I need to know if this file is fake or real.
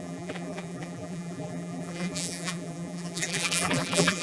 fake